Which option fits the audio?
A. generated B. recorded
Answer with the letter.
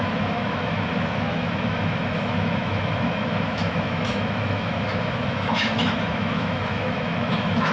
A